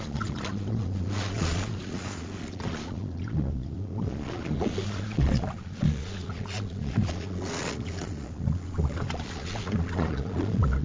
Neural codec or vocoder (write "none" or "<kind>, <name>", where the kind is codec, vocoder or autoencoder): vocoder, Vocos